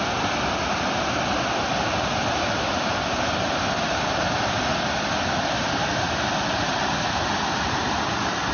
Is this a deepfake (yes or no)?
no